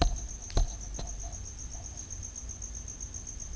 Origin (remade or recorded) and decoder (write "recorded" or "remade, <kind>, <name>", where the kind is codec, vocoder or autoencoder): recorded